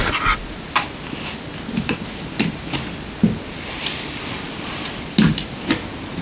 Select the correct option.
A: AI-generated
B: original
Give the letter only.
A